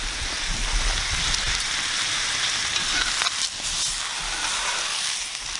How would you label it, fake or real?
real